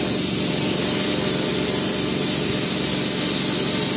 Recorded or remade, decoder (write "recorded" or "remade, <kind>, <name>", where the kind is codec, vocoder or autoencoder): recorded